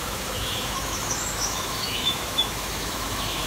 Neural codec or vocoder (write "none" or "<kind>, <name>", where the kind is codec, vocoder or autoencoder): autoencoder, DAC-VAE